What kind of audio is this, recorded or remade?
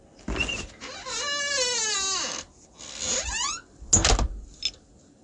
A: recorded